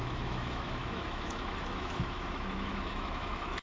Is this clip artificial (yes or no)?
yes